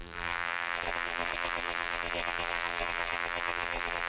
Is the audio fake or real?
fake